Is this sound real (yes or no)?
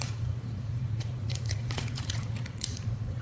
no